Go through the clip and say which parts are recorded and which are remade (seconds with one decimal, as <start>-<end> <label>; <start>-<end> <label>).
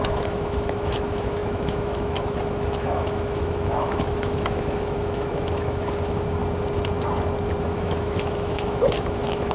0.0-6.4 remade; 6.4-7.6 recorded; 7.6-9.5 remade